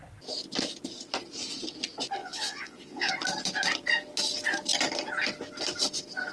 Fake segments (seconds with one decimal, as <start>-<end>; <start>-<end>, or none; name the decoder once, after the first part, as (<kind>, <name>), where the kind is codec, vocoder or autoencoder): 2.2-3.1 (vocoder, Vocos)